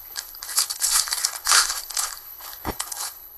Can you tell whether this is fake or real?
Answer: fake